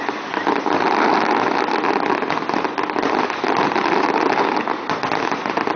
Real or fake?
real